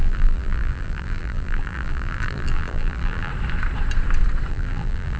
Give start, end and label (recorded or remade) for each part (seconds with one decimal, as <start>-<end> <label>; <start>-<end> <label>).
0.0-3.3 remade; 3.3-4.5 recorded; 4.5-5.2 remade